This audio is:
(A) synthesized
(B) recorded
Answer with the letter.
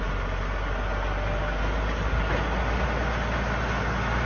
B